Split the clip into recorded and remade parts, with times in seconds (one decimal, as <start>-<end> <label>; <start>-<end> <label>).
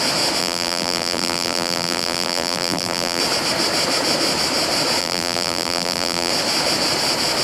0.0-0.4 recorded; 0.4-3.2 remade; 3.2-5.0 recorded; 5.0-6.3 remade; 6.3-7.4 recorded